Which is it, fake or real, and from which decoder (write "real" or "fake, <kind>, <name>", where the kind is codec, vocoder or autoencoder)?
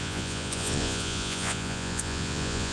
fake, vocoder, Vocos